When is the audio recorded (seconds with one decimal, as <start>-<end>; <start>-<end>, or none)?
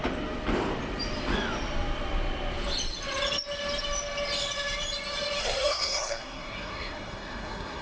0.0-5.4